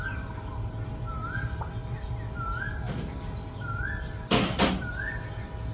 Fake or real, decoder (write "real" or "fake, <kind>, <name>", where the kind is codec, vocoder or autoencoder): real